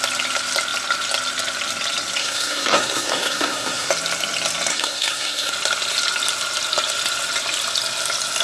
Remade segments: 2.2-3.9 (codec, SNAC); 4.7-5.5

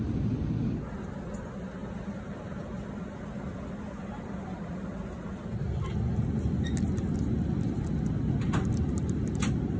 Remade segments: none